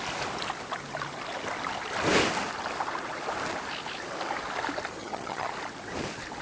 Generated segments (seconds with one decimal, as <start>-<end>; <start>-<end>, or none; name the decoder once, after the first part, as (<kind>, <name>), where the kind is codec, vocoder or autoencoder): 5.0-5.5 (vocoder, HiFi-GAN)